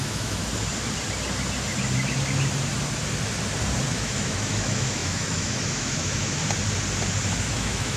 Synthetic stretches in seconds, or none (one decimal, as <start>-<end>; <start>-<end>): 0.0-0.4; 3.9-6.4; 7.5-8.0